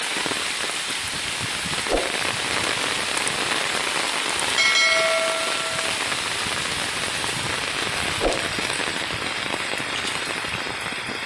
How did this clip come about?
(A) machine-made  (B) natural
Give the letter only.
B